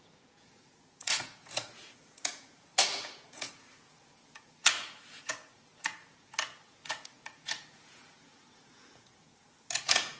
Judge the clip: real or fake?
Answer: fake